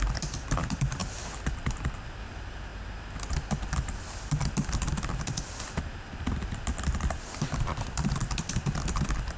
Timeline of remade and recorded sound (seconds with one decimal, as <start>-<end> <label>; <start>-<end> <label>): 0.0-2.7 remade; 2.7-4.2 recorded; 4.2-9.4 remade